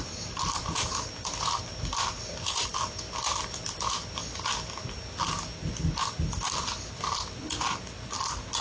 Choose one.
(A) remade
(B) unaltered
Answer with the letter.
B